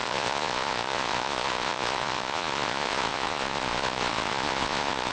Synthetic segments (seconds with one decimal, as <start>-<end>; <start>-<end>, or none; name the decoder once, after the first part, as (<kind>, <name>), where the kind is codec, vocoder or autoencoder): 0.0-5.1 (vocoder, Vocos)